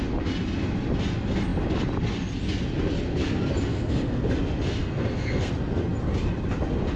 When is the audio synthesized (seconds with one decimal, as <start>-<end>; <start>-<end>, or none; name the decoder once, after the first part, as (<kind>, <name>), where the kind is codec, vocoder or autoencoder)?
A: 3.7-4.2 (codec, SNAC); 4.8-5.5